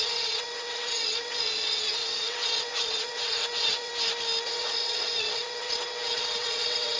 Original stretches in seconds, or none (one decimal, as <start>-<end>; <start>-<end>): 3.9-4.5